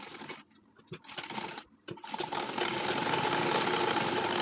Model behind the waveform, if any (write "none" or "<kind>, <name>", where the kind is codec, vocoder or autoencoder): none